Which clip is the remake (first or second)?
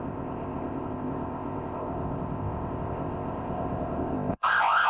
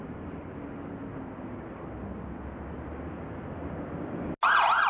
first